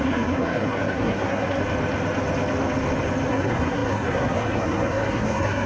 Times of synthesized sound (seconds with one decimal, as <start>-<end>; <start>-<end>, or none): 0.0-1.6; 3.3-5.7